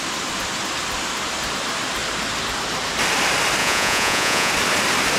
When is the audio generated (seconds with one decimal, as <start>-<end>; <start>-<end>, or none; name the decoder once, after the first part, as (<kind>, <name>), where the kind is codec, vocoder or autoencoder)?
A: 3.6-4.5 (vocoder, Vocos)